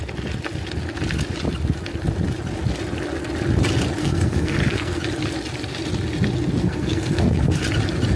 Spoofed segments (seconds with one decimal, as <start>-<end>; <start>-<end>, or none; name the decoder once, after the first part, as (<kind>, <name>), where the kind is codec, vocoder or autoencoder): 4.0-5.0 (codec, SNAC); 6.6-7.6